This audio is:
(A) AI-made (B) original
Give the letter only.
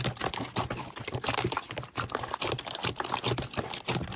B